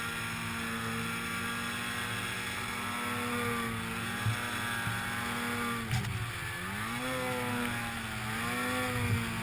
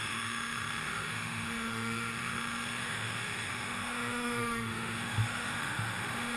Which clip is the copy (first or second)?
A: second